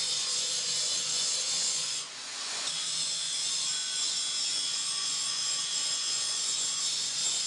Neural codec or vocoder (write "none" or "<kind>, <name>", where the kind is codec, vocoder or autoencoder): vocoder, Vocos